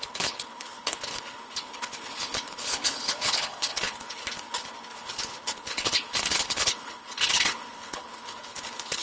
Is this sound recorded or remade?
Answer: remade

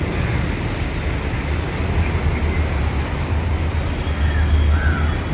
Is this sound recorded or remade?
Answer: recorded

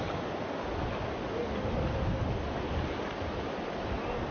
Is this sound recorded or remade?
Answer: recorded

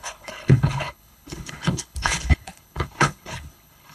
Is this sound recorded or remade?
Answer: remade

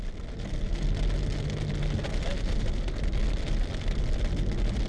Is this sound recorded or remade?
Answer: recorded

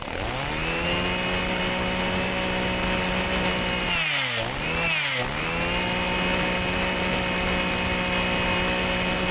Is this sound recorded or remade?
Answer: recorded